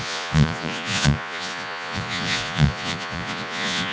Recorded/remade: remade